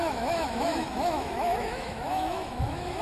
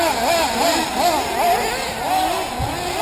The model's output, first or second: first